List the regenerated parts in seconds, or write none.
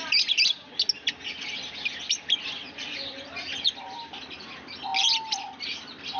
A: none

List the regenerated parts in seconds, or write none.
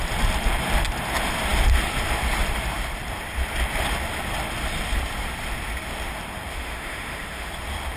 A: 6.5-7.5 (autoencoder, DAC-VAE)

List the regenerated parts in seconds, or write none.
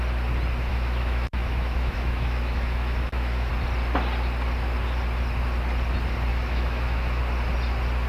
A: 0.7-3.5 (autoencoder, DAC-VAE); 6.3-7.2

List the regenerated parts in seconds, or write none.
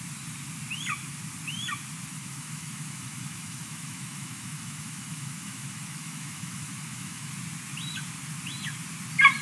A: 2.1-7.3 (autoencoder, DAC-VAE)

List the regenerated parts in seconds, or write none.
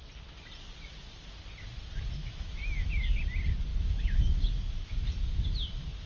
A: 2.2-2.9 (autoencoder, DAC-VAE); 3.7-4.9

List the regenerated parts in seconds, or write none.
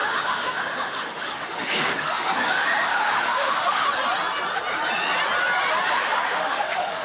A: 0.0-3.9 (autoencoder, DAC-VAE); 5.9-7.0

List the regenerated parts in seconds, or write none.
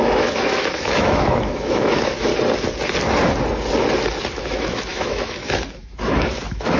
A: 0.0-2.3 (autoencoder, DAC-VAE); 4.4-6.8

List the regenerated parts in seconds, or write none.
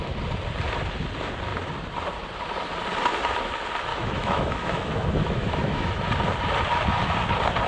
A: 3.9-6.0 (autoencoder, DAC-VAE)